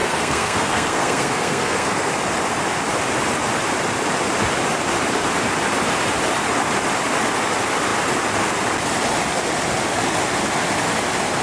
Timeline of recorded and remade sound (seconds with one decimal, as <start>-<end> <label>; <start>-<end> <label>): 0.0-2.1 remade; 2.1-11.4 recorded